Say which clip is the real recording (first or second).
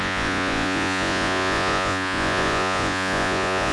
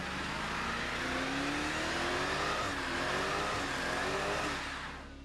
second